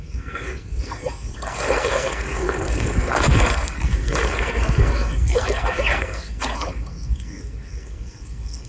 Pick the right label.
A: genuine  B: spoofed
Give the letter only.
B